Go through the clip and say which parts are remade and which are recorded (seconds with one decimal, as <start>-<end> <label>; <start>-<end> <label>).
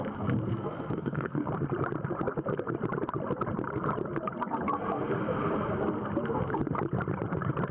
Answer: 0.0-0.5 recorded; 0.5-1.5 remade; 1.5-7.7 recorded